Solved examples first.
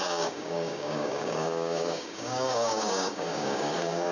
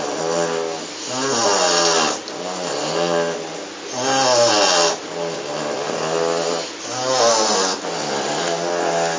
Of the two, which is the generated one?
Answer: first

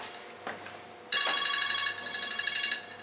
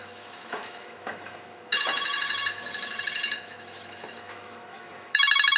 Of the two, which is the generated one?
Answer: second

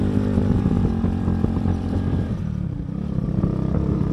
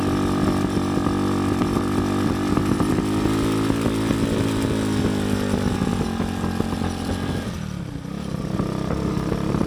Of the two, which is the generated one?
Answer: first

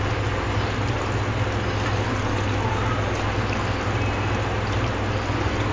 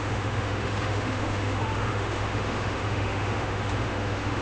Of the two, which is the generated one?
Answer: second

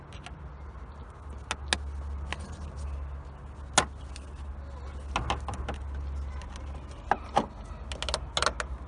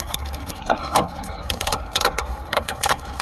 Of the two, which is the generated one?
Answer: second